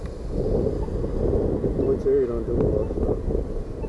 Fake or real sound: real